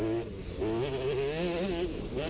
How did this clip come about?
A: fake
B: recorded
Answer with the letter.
B